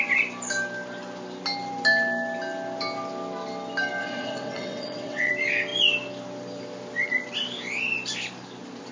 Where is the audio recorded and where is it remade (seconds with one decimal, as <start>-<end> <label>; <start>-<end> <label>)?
0.0-4.0 recorded; 4.0-5.3 remade; 5.3-8.9 recorded